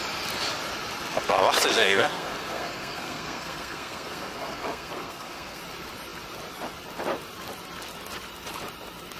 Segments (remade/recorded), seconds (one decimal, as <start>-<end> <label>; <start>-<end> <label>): 0.0-1.7 recorded; 1.7-5.6 remade; 5.6-9.2 recorded